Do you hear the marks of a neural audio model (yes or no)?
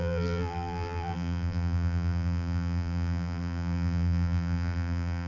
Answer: yes